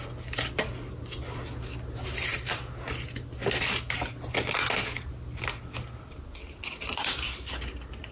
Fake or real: real